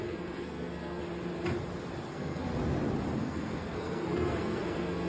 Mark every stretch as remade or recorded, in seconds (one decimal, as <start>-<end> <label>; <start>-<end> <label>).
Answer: 0.0-1.0 remade; 1.0-2.1 recorded; 2.1-2.5 remade; 2.5-3.2 recorded; 3.2-5.1 remade

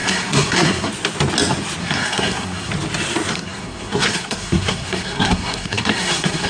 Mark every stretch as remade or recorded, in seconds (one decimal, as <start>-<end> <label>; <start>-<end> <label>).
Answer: 0.0-0.9 remade; 0.9-1.8 recorded; 1.8-2.7 remade; 2.7-3.3 recorded; 3.3-6.5 remade

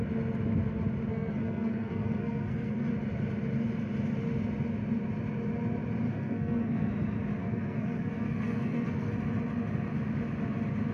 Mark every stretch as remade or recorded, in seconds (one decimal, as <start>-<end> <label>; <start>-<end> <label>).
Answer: 0.0-1.1 recorded; 1.1-2.9 remade; 2.9-6.1 recorded; 6.1-6.9 remade; 6.9-7.4 recorded; 7.4-9.1 remade; 9.1-10.9 recorded

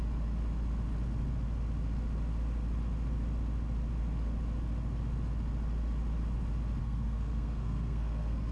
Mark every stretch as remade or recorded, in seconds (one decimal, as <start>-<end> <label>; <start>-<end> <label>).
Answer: 0.0-6.8 recorded; 6.8-8.5 remade

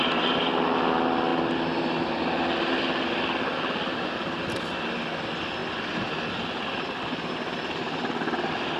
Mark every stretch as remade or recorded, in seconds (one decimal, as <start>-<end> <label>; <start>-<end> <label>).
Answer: 0.0-8.8 recorded